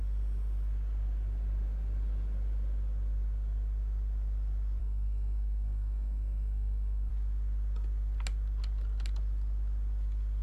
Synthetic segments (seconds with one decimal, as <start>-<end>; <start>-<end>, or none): 4.8-7.1